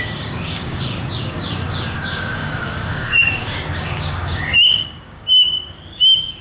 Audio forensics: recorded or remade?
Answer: remade